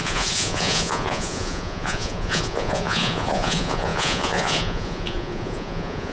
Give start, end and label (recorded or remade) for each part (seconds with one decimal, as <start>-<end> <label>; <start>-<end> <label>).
0.0-6.1 remade